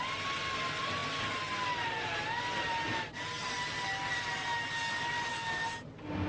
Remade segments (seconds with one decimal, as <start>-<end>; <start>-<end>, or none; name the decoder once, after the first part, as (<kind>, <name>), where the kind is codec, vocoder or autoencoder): none